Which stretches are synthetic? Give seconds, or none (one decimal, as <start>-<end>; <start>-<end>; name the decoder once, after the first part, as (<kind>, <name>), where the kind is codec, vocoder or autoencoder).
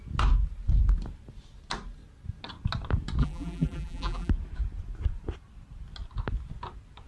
3.2-4.3 (vocoder, BigVGAN v2)